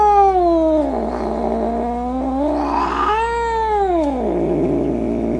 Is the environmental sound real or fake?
real